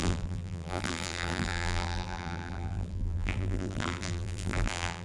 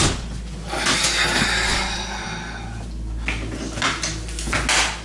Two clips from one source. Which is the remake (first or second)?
first